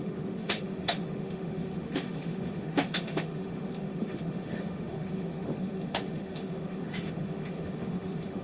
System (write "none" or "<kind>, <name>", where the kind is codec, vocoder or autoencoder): autoencoder, DAC-VAE